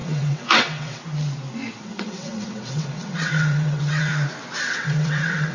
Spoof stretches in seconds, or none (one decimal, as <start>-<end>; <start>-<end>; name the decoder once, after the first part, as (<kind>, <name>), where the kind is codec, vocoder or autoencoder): 0.0-1.0 (vocoder, WaveNeXt); 1.8-4.1; 4.6-5.5